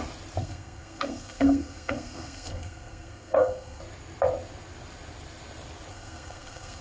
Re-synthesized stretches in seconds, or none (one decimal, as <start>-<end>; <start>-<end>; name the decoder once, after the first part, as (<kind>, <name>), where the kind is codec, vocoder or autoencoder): 0.4-3.8 (codec, SNAC); 5.9-6.8